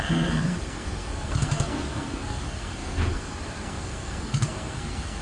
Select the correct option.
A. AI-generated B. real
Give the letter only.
A